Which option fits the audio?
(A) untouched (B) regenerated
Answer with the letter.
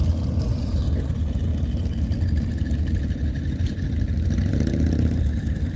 A